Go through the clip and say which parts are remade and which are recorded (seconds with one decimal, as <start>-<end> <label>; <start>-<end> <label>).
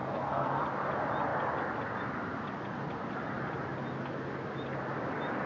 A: 0.0-0.6 remade; 0.6-5.5 recorded